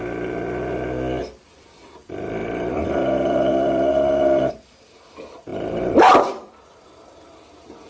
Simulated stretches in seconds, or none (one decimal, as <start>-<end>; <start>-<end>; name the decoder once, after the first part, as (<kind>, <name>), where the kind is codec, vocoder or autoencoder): 2.4-4.5 (vocoder, BigVGAN v2); 5.5-7.5